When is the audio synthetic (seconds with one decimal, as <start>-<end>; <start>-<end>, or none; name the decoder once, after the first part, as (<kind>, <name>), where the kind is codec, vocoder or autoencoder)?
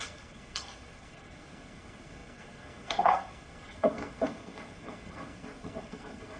0.0-6.4 (codec, SNAC)